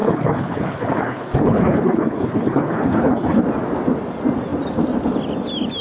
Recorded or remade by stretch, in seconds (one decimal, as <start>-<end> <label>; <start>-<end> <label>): 0.0-3.4 remade; 3.4-5.8 recorded